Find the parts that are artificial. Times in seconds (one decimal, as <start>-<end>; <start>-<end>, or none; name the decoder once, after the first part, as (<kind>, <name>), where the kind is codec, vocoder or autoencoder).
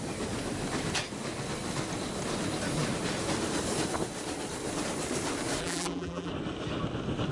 5.6-6.3 (vocoder, BigVGAN v2)